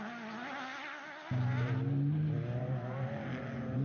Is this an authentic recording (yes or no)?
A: yes